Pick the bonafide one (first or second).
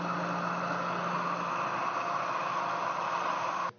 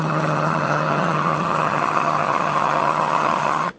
first